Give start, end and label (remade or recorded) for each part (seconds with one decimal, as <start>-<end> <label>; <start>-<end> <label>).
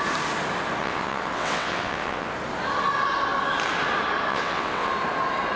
0.0-0.8 recorded; 0.8-2.3 remade; 2.3-4.3 recorded; 4.3-4.9 remade; 4.9-5.6 recorded